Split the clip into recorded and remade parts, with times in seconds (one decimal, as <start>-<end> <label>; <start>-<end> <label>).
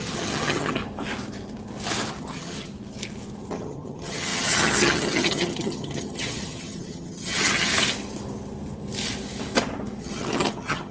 0.0-0.8 remade; 0.8-2.1 recorded; 2.1-2.7 remade; 2.7-3.5 recorded; 3.5-7.7 remade; 7.7-10.0 recorded; 10.0-10.9 remade